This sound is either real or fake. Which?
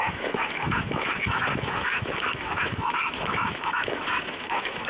fake